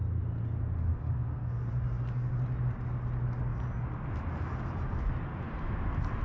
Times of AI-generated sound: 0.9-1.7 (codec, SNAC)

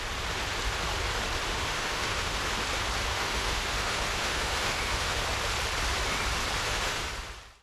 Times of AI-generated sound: 1.5-2.4 (autoencoder, DAC-VAE); 3.1-5.2; 6.6-7.1

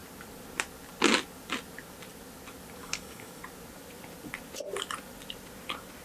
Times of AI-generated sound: 2.8-3.4 (codec, DAC)

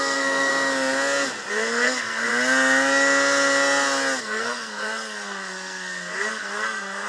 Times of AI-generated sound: 0.0-0.5 (codec, SNAC); 1.5-2.3; 4.2-7.1

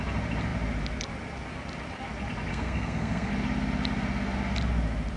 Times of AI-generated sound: 2.5-3.3 (codec, SNAC)